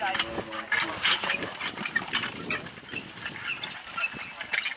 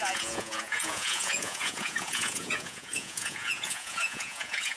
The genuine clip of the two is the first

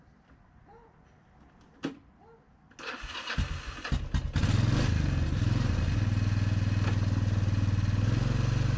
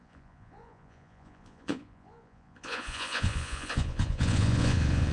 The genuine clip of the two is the first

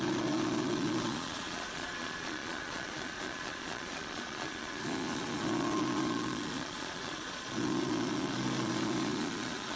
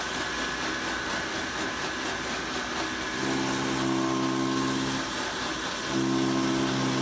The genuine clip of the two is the second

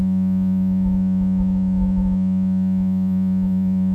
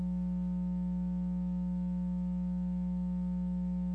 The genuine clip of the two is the second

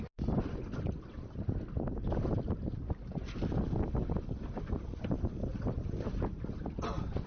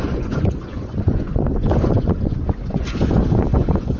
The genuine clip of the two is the first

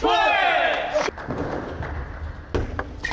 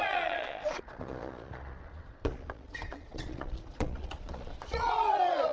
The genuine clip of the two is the first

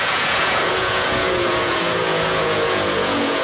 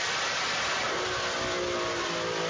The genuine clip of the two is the second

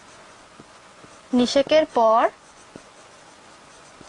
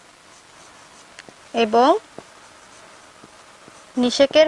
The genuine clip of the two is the second